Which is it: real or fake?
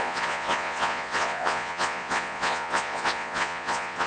fake